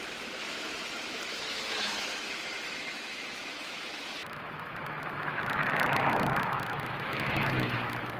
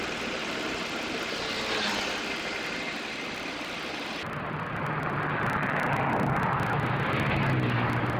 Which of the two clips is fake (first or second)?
first